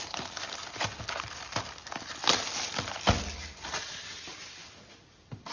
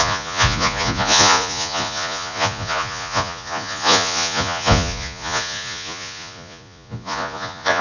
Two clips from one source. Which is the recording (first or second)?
first